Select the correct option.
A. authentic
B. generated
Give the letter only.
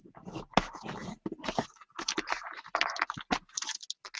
A